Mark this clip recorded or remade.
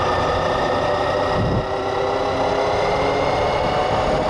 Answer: recorded